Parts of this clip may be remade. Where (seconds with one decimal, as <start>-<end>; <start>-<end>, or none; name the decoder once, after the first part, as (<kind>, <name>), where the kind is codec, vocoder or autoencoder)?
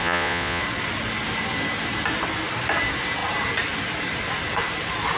0.0-0.6 (vocoder, Vocos)